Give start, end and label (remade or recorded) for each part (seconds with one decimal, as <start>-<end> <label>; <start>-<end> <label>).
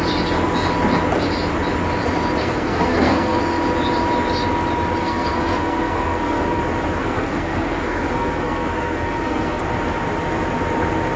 0.0-2.4 recorded; 2.4-3.4 remade; 3.4-5.0 recorded; 5.0-6.6 remade; 6.6-7.0 recorded; 7.0-9.6 remade; 9.6-11.2 recorded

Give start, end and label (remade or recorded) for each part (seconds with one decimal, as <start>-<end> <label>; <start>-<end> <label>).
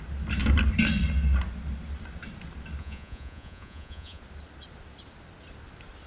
0.0-2.8 recorded; 2.8-4.2 remade; 4.2-6.1 recorded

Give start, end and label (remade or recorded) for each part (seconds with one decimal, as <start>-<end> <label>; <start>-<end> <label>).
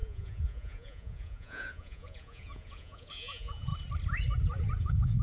0.0-3.7 remade; 3.7-4.8 recorded; 4.8-5.2 remade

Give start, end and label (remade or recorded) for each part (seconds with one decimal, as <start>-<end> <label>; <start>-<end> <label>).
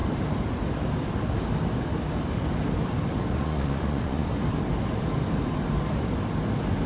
0.0-3.3 recorded; 3.3-4.3 remade; 4.3-6.9 recorded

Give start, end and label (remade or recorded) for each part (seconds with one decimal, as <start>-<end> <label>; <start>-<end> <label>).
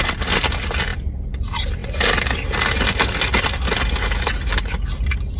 0.0-5.4 recorded